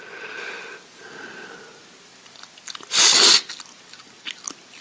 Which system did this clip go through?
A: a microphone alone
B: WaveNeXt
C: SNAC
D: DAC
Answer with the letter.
A